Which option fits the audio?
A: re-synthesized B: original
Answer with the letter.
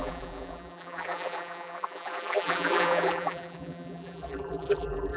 A